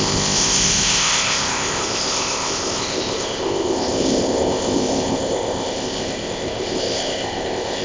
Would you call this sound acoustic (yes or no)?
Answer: no